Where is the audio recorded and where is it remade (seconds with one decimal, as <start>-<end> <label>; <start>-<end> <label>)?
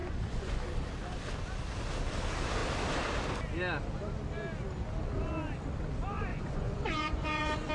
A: 0.0-0.6 remade; 0.6-6.3 recorded; 6.3-7.7 remade